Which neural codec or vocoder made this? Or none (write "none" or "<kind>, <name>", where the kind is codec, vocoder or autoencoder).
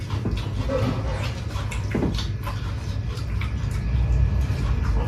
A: none